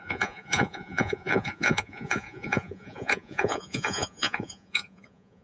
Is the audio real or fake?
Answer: fake